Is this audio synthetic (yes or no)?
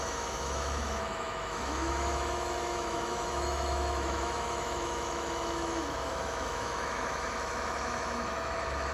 yes